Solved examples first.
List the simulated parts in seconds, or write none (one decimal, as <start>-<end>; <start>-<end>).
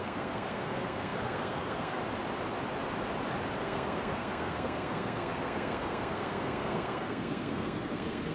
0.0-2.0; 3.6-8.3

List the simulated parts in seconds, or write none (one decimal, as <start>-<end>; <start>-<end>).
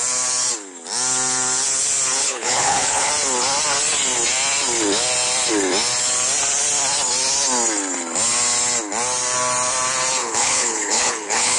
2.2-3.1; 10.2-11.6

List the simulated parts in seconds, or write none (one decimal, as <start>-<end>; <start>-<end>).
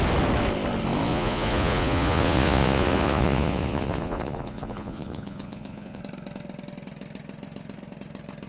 1.1-6.0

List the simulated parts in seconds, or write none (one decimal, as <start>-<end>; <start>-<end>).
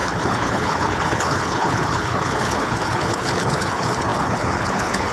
0.0-5.1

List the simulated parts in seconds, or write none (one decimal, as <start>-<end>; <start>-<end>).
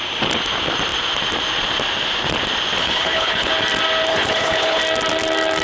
2.8-3.5; 4.1-4.8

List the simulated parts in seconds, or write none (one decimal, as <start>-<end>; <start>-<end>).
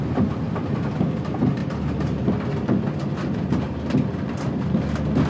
none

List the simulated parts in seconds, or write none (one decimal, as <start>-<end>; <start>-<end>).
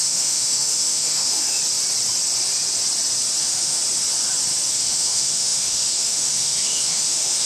0.0-1.6; 3.4-3.8; 4.7-7.5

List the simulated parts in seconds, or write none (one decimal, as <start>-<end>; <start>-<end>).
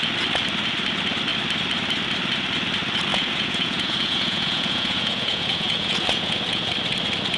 3.1-6.7